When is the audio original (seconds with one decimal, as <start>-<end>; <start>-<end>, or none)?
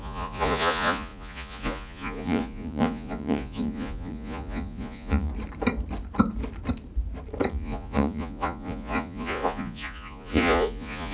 5.3-7.5